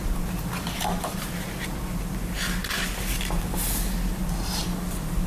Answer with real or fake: real